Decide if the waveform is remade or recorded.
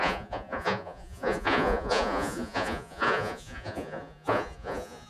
remade